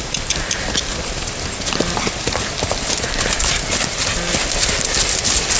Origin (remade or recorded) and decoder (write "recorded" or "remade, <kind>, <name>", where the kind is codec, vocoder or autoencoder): recorded